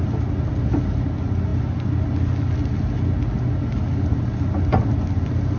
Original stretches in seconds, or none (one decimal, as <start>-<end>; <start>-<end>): 0.0-5.6